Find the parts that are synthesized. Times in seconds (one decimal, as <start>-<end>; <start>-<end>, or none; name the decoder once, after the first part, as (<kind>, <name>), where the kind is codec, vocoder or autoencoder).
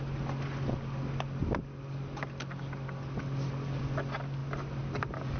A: none